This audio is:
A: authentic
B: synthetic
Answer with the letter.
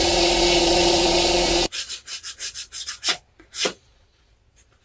B